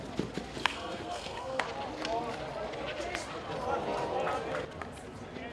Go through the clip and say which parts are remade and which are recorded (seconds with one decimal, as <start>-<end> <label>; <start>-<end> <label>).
0.0-0.6 recorded; 0.6-1.6 remade; 1.6-5.5 recorded